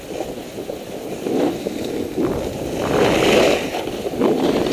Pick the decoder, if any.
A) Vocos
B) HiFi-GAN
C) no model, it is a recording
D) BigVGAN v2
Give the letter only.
C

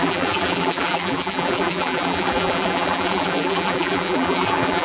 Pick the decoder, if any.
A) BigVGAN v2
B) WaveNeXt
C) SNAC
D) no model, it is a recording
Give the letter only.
A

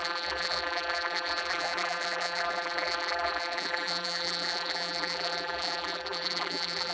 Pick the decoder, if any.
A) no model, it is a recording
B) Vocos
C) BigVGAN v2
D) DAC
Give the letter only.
C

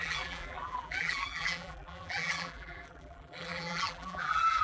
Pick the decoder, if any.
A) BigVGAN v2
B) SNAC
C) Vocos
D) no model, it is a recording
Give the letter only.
A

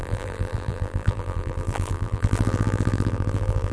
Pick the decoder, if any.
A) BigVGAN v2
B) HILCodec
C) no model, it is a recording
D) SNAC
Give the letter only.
A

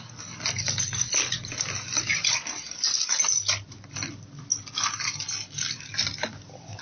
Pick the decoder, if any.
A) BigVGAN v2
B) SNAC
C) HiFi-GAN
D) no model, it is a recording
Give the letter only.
D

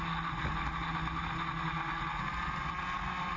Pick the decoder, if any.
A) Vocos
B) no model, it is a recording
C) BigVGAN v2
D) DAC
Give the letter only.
B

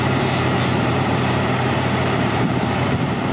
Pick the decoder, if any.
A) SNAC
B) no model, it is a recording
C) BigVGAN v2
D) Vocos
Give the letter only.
C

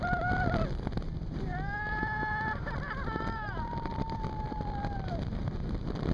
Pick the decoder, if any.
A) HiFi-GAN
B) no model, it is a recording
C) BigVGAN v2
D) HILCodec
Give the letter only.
C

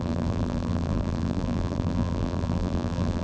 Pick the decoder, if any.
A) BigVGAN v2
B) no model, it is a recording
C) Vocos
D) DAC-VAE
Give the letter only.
A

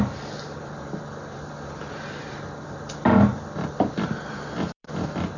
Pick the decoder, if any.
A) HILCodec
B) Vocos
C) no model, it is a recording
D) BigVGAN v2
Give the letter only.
D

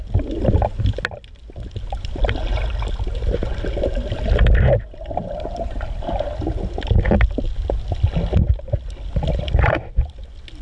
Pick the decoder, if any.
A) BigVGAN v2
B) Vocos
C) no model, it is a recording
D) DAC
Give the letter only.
C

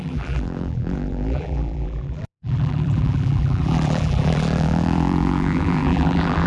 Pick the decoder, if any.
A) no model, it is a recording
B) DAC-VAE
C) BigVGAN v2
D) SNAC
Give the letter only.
C